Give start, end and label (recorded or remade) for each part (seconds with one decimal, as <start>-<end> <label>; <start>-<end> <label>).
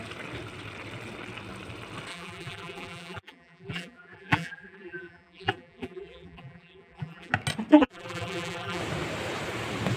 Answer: 0.0-2.1 recorded; 2.1-7.3 remade; 7.3-7.7 recorded; 7.7-8.8 remade; 8.8-10.0 recorded